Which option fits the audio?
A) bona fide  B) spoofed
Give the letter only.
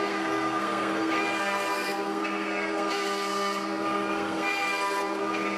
B